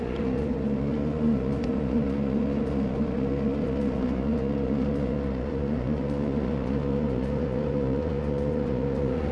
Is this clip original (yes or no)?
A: no